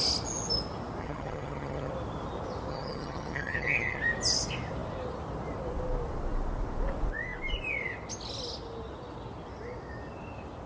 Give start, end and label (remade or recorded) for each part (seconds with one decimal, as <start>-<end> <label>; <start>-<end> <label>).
0.0-1.0 recorded; 1.0-1.9 remade; 1.9-2.7 recorded; 2.7-4.0 remade; 4.0-10.7 recorded